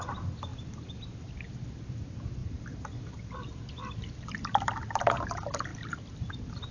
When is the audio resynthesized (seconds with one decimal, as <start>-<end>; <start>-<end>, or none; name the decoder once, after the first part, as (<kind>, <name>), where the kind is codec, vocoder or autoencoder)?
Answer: 0.5-1.3 (vocoder, BigVGAN v2); 2.4-3.3